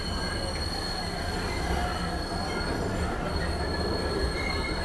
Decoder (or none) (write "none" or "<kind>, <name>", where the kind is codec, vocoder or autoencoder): none